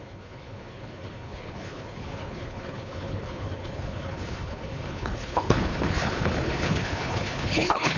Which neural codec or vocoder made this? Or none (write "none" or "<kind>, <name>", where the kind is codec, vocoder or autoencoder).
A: codec, HILCodec